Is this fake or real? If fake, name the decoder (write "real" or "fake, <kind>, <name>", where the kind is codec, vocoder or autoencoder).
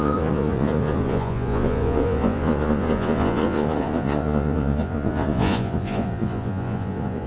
fake, vocoder, Vocos